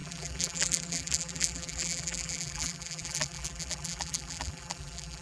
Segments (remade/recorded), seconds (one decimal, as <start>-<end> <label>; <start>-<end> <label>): 0.0-5.2 remade